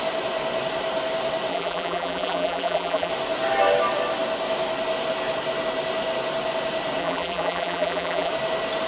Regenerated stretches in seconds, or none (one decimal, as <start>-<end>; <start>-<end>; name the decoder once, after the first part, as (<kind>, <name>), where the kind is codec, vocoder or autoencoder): 1.5-3.1 (vocoder, BigVGAN v2); 7.0-8.3